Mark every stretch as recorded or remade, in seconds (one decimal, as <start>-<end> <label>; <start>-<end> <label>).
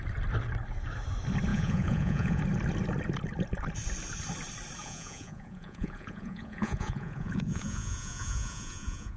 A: 0.0-1.5 recorded; 1.5-2.4 remade; 2.4-4.8 recorded; 4.8-9.2 remade